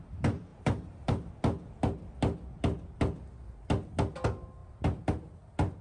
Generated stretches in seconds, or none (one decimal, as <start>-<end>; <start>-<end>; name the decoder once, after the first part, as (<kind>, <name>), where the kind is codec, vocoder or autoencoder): 0.5-1.3 (vocoder, BigVGAN v2); 4.6-5.8